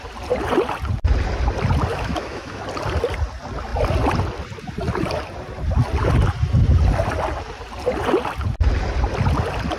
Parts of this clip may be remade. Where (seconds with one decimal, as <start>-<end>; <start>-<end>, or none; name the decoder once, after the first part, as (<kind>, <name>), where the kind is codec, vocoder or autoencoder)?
1.9-2.6 (autoencoder, DAC-VAE)

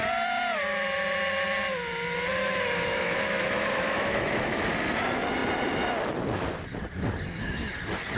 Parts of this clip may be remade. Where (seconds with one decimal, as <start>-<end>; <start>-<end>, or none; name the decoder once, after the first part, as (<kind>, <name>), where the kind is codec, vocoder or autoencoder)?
2.4-4.7 (autoencoder, DAC-VAE)

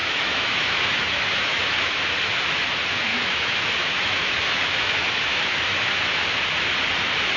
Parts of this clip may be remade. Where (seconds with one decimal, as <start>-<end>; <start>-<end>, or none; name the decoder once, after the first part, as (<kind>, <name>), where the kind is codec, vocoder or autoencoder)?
0.0-2.0 (autoencoder, DAC-VAE); 3.1-6.2

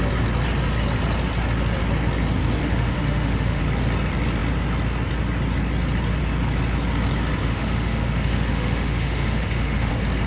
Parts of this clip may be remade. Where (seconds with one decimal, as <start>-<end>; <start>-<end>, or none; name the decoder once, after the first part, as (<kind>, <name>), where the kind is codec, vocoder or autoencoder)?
2.6-3.6 (autoencoder, DAC-VAE); 7.4-9.9

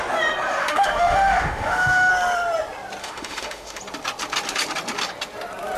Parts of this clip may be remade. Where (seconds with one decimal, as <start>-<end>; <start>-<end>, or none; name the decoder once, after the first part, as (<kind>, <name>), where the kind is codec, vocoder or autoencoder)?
0.6-2.1 (autoencoder, DAC-VAE); 3.0-3.8